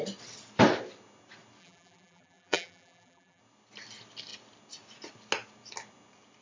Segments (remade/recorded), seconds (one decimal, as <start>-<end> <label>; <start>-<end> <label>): 0.0-1.6 recorded; 1.6-3.4 remade; 3.4-6.4 recorded